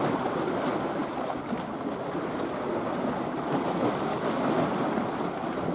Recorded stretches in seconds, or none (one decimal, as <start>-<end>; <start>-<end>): 0.0-5.7